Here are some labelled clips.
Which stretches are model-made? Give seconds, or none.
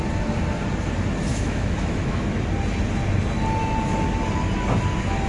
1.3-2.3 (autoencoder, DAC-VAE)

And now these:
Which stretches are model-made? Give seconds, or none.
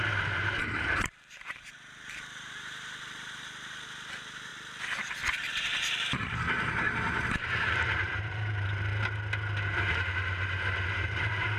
0.0-4.5 (vocoder, BigVGAN v2); 5.5-8.9; 10.9-11.6